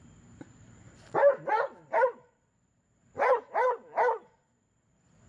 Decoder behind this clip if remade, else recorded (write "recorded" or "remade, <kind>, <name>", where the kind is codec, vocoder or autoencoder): remade, vocoder, BigVGAN v2